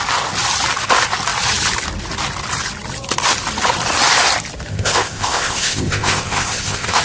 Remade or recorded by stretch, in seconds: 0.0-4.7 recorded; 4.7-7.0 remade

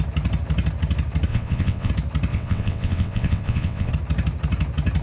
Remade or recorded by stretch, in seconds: 0.0-1.3 recorded; 1.3-1.9 remade; 1.9-2.3 recorded; 2.3-3.9 remade; 3.9-5.0 recorded

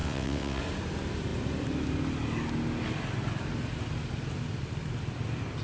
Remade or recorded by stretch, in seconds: 0.0-0.6 remade; 0.6-5.6 recorded